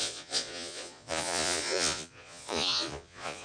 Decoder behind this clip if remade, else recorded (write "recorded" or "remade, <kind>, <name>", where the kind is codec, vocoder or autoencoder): remade, vocoder, Vocos